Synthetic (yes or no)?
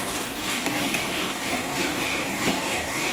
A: yes